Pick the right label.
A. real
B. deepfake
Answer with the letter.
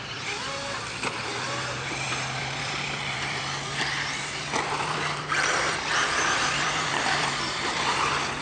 B